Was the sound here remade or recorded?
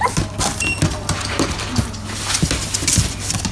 recorded